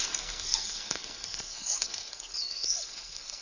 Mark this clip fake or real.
fake